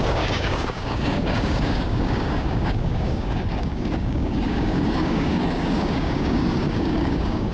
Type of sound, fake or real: fake